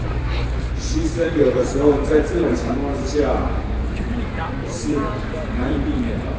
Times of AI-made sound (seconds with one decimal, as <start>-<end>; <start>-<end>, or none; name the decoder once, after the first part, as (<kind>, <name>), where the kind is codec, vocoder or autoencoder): 0.0-2.8 (vocoder, BigVGAN v2); 3.5-6.4